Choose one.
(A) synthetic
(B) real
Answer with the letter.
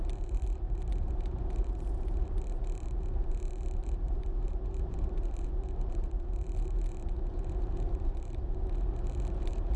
A